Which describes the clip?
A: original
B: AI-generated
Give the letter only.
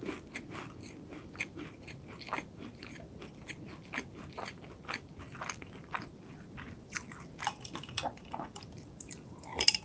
B